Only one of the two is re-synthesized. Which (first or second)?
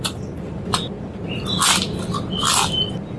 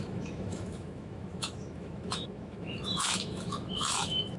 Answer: second